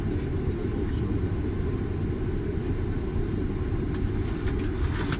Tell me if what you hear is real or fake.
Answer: real